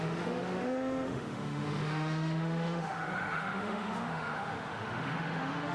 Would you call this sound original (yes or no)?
no